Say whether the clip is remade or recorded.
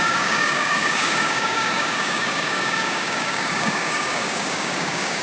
remade